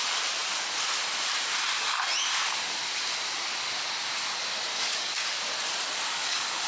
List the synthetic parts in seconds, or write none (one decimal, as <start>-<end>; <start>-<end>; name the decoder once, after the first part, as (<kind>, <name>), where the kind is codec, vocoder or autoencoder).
4.7-5.4 (codec, DAC); 6.1-6.7